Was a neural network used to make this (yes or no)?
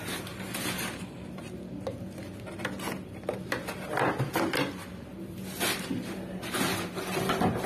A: no